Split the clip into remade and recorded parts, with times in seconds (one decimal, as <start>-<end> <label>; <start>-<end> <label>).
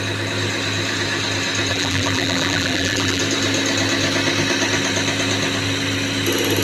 0.0-1.7 recorded; 1.7-3.2 remade; 3.2-6.6 recorded